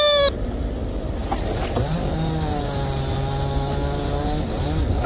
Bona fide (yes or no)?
yes